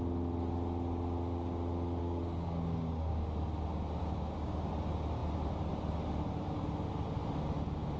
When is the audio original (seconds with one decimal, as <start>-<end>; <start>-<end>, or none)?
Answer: 0.0-2.0; 3.2-4.0; 4.7-8.0